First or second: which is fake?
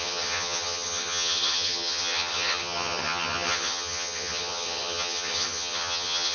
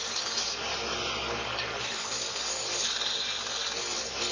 first